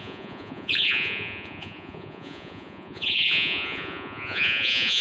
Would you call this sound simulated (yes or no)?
yes